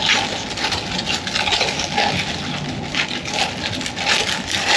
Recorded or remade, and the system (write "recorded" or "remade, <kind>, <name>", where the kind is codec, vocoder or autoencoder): recorded